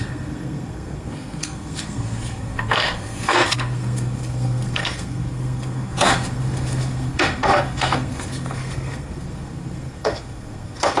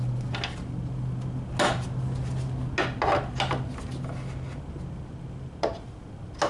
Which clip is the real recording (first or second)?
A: second